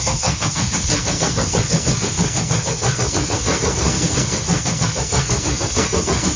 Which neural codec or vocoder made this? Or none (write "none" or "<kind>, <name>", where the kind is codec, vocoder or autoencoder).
codec, SNAC